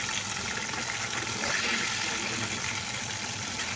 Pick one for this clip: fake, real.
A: real